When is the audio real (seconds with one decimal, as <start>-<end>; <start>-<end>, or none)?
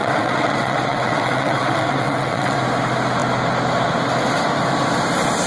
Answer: 2.6-5.5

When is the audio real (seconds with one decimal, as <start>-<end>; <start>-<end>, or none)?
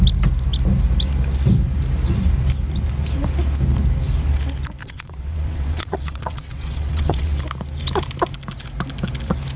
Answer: 0.0-4.8; 7.4-9.6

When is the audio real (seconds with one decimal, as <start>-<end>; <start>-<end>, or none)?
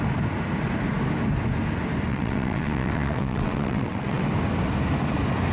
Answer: 0.0-2.1; 4.2-5.5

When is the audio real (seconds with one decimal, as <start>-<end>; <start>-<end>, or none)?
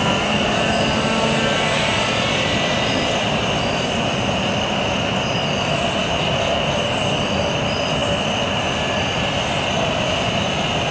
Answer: 0.0-10.9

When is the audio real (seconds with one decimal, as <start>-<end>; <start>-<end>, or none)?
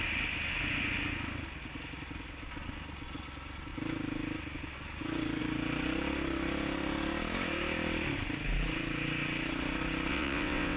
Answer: 0.0-10.1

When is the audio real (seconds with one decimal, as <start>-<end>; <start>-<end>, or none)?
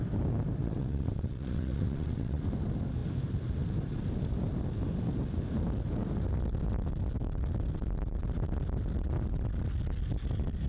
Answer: 0.0-0.6; 2.4-10.7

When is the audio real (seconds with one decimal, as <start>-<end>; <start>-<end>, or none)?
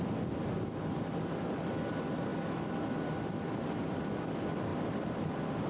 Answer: 0.0-5.7